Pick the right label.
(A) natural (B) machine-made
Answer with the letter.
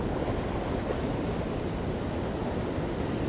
A